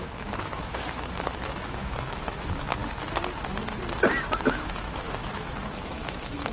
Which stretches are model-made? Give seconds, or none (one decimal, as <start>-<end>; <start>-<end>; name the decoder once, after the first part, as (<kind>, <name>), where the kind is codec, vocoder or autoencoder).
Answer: 0.0-2.8 (autoencoder, DAC-VAE); 4.4-6.5